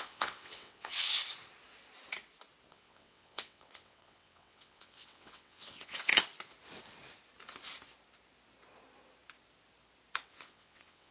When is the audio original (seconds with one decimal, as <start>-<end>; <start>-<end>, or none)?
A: 1.2-2.7; 6.1-10.3